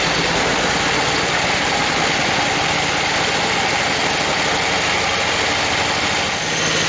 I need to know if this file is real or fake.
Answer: real